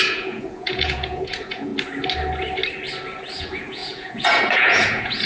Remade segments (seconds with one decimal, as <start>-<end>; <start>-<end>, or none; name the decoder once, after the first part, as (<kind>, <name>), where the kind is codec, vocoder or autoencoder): 0.0-1.7 (vocoder, Vocos); 3.4-5.3